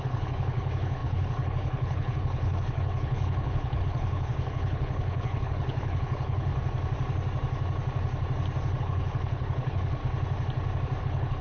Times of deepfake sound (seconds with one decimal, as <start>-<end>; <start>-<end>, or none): 0.0-6.5; 8.8-10.0; 11.0-11.4